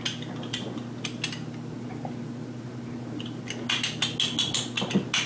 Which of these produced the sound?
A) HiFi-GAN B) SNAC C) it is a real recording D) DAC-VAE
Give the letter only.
C